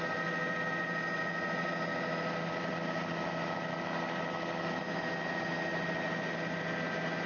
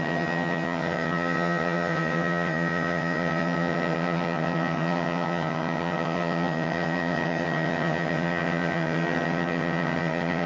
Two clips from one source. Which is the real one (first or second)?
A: first